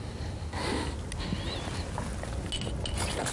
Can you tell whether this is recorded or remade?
recorded